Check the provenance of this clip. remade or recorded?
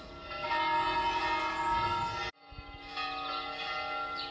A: recorded